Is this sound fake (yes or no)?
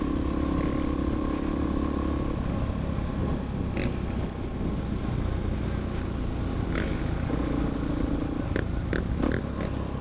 no